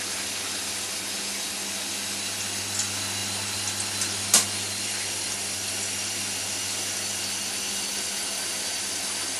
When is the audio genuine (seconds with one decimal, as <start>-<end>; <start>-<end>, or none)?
0.0-9.4